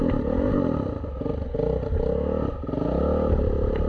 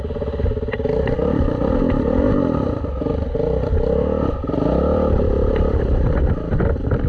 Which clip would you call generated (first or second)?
second